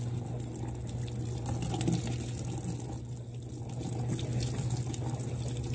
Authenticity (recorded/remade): recorded